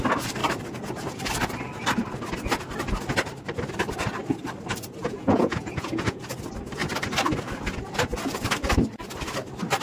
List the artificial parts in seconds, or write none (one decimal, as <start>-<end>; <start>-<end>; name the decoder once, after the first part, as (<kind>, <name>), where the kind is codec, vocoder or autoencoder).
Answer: 5.0-6.2 (vocoder, Vocos)